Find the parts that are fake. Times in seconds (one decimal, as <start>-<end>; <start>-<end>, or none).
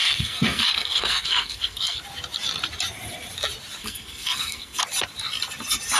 0.0-2.0; 3.8-4.8